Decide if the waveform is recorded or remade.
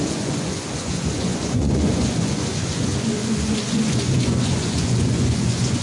remade